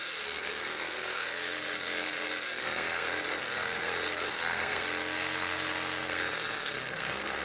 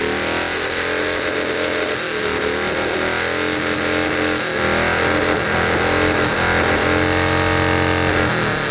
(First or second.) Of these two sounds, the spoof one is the first